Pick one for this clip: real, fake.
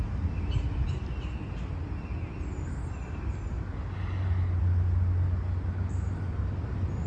real